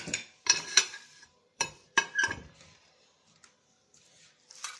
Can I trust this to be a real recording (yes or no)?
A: no